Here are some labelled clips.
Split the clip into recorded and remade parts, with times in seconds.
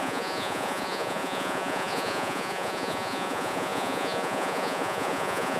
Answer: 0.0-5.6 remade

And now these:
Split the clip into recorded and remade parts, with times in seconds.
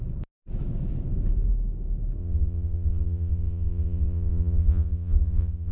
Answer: 0.0-2.2 recorded; 2.2-5.7 remade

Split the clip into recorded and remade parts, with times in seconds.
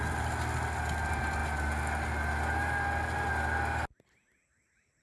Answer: 0.0-5.0 recorded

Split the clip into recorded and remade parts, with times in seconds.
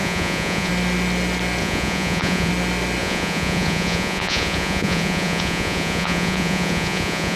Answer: 0.0-0.7 remade; 0.7-1.6 recorded; 1.6-2.5 remade; 2.5-3.0 recorded; 3.0-7.4 remade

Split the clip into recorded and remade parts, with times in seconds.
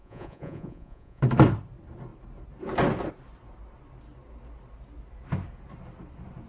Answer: 0.0-1.2 remade; 1.2-6.5 recorded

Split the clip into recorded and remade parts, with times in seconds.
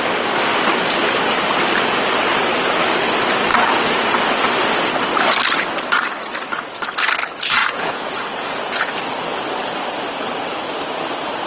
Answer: 0.0-7.6 recorded; 7.6-8.9 remade; 8.9-11.5 recorded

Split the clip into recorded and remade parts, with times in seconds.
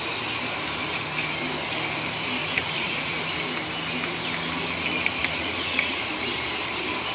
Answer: 0.0-2.4 recorded; 2.4-3.2 remade; 3.2-5.2 recorded; 5.2-6.1 remade; 6.1-7.1 recorded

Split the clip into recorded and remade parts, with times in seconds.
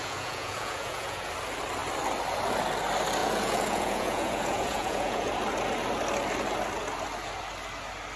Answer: 0.0-1.3 remade; 1.3-3.2 recorded; 3.2-5.3 remade; 5.3-8.2 recorded